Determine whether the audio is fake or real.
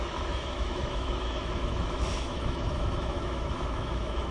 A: fake